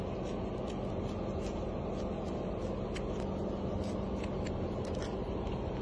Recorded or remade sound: recorded